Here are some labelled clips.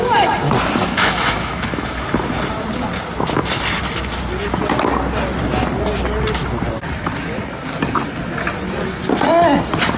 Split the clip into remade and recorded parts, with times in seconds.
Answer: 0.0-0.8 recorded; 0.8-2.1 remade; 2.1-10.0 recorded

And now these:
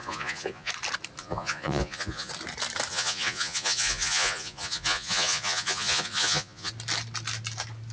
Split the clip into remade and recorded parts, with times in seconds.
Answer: 0.0-0.7 remade; 0.7-1.2 recorded; 1.2-2.3 remade; 2.3-2.9 recorded; 2.9-6.7 remade; 6.7-7.9 recorded

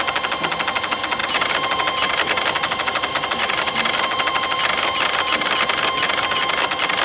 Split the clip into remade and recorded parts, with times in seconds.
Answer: 0.0-1.2 recorded; 1.2-5.4 remade; 5.4-7.0 recorded

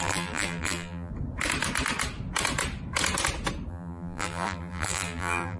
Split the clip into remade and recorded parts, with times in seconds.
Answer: 0.0-1.1 remade; 1.1-3.7 recorded; 3.7-5.6 remade